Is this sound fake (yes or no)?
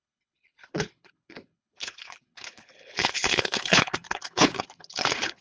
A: yes